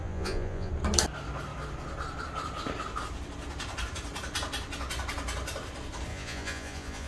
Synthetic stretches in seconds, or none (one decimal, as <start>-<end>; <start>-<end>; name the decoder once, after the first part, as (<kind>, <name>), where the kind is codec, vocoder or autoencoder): 0.0-0.7 (vocoder, Vocos); 6.1-7.1